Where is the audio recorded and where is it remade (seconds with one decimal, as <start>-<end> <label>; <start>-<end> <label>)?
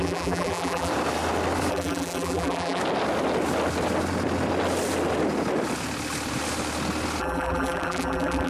0.0-0.9 remade; 0.9-1.7 recorded; 1.7-2.8 remade; 2.8-7.2 recorded; 7.2-8.5 remade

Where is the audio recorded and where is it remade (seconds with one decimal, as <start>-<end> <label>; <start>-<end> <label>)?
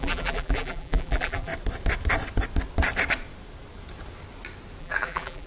0.0-1.5 remade; 1.5-4.8 recorded; 4.8-5.5 remade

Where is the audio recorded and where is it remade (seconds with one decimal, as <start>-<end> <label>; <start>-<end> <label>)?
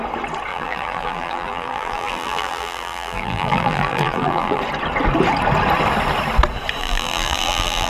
0.0-0.5 recorded; 0.5-4.6 remade; 4.6-6.8 recorded; 6.8-7.9 remade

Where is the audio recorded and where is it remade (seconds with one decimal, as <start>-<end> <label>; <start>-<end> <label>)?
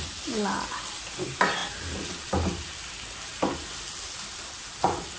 0.0-5.2 recorded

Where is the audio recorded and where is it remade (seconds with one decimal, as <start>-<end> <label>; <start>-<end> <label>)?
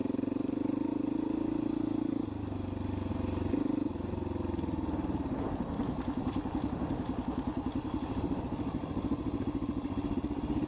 0.0-10.7 recorded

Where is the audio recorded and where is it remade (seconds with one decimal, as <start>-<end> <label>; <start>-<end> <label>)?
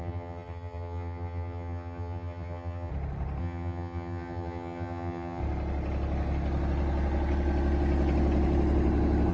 0.0-2.9 remade; 2.9-3.4 recorded; 3.4-5.4 remade; 5.4-9.3 recorded